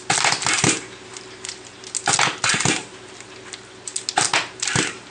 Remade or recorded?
recorded